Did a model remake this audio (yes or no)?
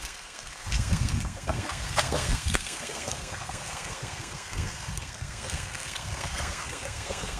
yes